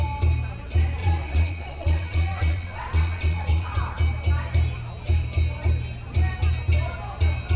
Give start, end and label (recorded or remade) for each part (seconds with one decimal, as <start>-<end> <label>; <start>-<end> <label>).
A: 0.0-1.0 recorded; 1.0-3.8 remade; 3.8-7.6 recorded